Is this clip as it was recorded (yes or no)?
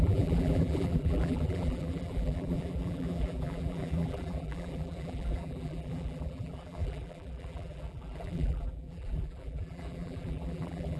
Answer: no